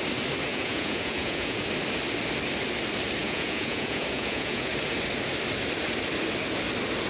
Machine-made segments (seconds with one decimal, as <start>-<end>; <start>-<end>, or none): 0.5-1.7; 3.2-4.7